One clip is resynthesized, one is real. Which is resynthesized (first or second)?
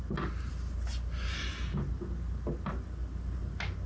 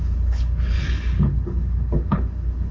second